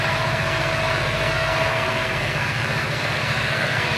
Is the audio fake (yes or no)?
yes